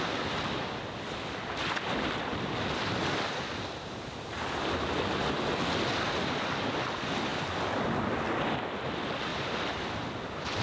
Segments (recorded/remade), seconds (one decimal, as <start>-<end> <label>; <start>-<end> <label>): 0.0-9.3 recorded; 9.3-9.8 remade; 9.8-10.6 recorded